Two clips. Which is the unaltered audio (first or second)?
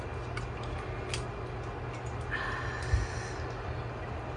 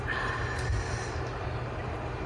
first